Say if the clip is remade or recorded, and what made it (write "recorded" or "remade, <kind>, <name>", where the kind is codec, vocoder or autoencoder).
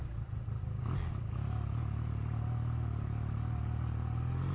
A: recorded